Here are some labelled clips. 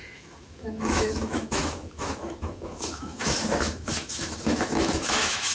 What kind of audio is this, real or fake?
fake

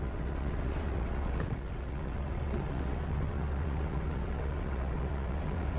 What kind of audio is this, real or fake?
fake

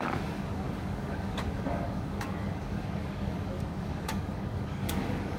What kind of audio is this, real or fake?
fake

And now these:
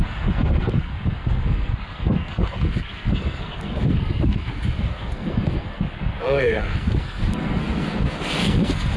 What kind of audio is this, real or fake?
fake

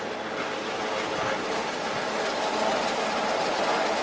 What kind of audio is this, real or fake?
real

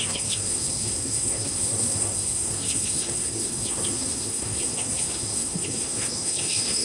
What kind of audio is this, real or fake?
fake